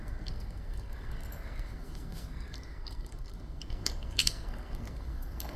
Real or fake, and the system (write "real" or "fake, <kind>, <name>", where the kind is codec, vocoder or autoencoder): fake, codec, SNAC